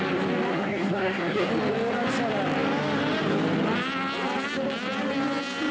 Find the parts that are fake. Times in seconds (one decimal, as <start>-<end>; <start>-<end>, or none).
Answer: 0.5-1.5